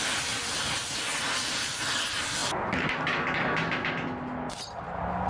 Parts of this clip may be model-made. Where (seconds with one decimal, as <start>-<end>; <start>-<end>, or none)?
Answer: none